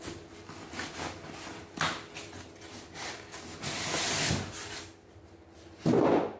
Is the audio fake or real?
real